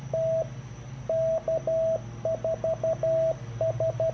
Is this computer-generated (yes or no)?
no